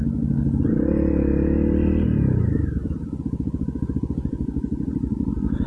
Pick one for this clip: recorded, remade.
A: recorded